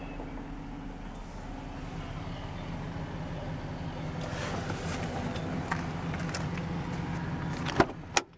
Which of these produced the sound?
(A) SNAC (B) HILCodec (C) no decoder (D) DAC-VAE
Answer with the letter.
C